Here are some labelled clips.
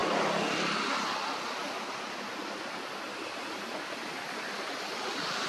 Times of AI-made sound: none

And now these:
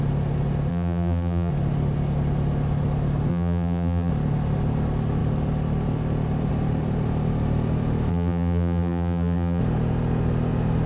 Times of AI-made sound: 0.7-1.5 (vocoder, BigVGAN v2); 3.3-4.1; 8.1-9.6

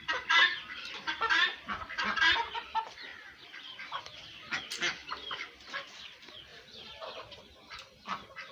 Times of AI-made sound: 0.0-3.1 (vocoder, BigVGAN v2); 4.0-8.5